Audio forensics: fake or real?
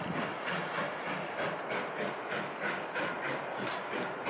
real